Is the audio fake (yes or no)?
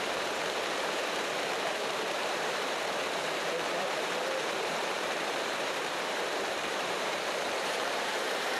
yes